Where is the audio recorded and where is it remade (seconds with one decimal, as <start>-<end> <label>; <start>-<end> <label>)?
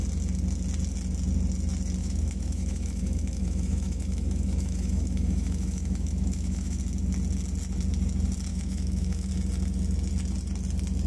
0.0-2.0 recorded; 2.0-6.8 remade; 6.8-8.5 recorded; 8.5-9.3 remade; 9.3-11.1 recorded